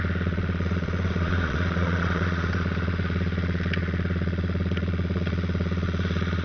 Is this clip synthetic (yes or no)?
yes